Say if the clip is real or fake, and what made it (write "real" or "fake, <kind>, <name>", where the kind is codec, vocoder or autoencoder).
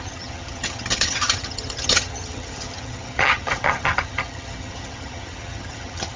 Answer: fake, vocoder, HiFi-GAN